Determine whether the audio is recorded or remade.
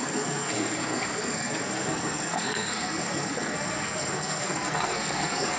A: remade